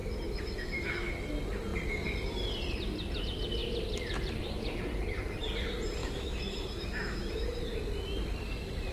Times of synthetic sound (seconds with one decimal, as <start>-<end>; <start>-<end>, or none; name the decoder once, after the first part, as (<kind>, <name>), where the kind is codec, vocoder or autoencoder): 0.0-1.1 (autoencoder, DAC-VAE); 6.0-7.6